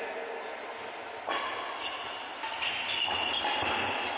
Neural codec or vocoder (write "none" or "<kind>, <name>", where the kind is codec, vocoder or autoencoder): none